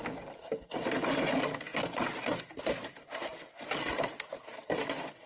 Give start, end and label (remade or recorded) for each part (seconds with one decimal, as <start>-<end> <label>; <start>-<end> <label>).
0.0-5.3 recorded